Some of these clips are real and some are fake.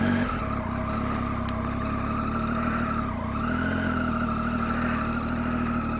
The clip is real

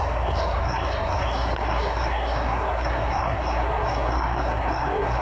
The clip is fake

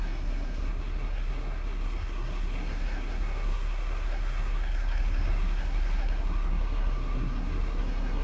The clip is fake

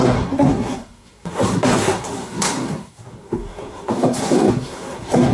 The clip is fake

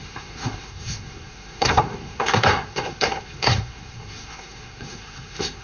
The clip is fake